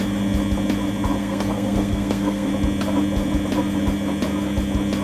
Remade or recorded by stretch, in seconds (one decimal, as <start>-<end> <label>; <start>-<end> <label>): 0.0-1.2 recorded; 1.2-2.5 remade; 2.5-5.0 recorded